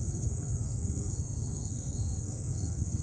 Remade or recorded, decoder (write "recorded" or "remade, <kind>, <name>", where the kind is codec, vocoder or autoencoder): remade, codec, SNAC